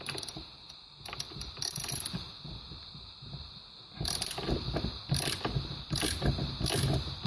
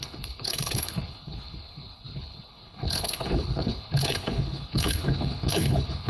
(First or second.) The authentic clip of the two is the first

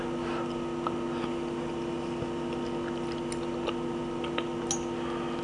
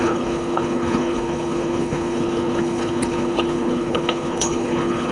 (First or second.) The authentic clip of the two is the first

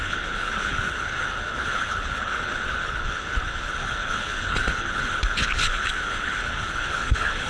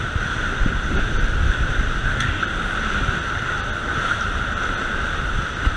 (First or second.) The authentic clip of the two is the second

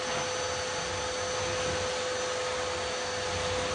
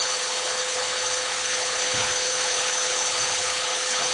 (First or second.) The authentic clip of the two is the first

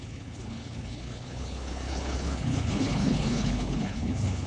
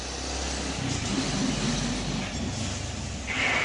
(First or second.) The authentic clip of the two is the second